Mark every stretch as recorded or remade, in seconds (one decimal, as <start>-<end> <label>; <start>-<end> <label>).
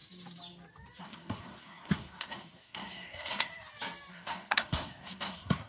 0.0-1.0 recorded; 1.0-3.5 remade; 3.5-4.1 recorded; 4.1-5.7 remade